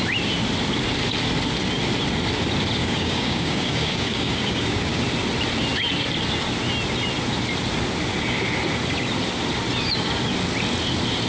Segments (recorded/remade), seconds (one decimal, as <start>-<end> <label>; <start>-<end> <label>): 0.0-2.8 recorded; 2.8-5.0 remade; 5.0-11.3 recorded